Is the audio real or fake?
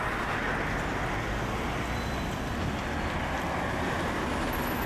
real